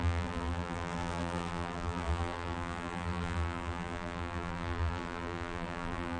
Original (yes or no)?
no